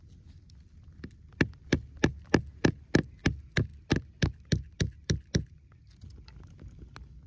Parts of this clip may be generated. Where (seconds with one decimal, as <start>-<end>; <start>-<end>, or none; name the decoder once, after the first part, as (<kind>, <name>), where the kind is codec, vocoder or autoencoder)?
none